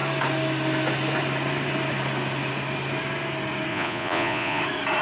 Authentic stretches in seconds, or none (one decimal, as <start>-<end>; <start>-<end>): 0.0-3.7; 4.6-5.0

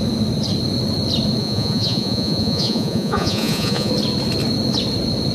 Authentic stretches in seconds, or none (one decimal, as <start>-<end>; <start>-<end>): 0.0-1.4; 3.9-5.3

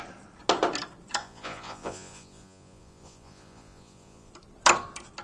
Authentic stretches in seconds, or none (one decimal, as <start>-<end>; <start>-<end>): 0.0-1.2; 4.3-5.2

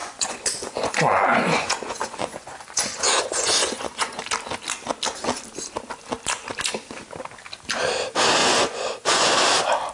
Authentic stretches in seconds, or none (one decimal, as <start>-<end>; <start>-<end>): 4.2-8.4; 9.3-9.9

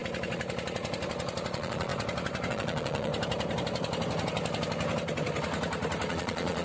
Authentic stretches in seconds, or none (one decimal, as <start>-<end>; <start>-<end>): 0.0-1.5; 1.9-2.5; 3.1-6.1

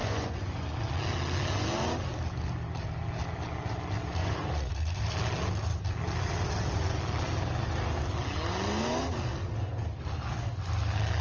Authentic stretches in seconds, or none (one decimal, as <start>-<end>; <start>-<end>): 0.8-4.2; 4.7-11.2